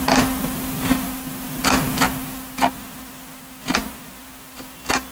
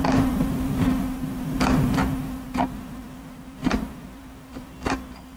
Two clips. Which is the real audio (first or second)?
first